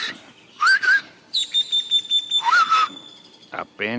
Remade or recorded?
recorded